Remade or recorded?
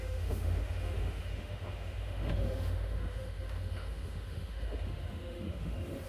remade